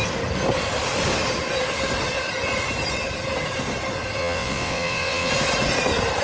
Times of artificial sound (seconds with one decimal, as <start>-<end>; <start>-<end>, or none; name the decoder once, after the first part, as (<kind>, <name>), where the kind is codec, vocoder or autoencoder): 4.2-5.3 (vocoder, WaveNeXt)